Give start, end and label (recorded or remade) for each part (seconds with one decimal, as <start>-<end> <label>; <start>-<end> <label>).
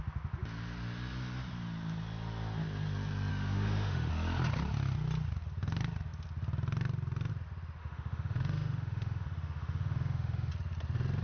0.0-3.3 recorded; 3.3-4.1 remade; 4.1-7.8 recorded; 7.8-10.5 remade; 10.5-11.2 recorded